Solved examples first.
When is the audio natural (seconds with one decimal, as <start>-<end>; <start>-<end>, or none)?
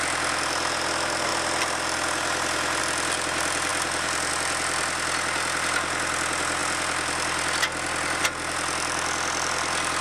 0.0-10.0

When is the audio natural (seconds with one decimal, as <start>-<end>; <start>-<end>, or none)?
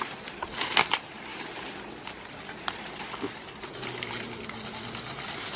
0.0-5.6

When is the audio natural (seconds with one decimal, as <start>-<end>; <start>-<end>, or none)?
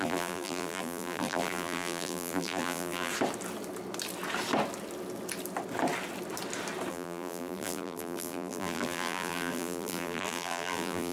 3.1-6.9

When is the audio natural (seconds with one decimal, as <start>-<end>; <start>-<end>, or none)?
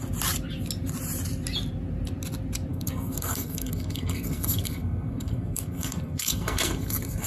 0.0-2.7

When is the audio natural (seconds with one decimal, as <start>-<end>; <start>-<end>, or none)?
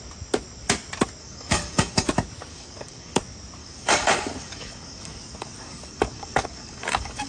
0.0-1.2; 2.1-2.5; 3.2-3.6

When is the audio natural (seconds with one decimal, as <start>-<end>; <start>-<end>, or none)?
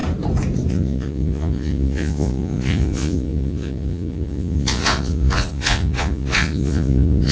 0.0-0.7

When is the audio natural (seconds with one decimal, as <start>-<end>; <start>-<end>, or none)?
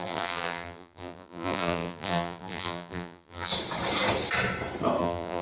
3.5-5.0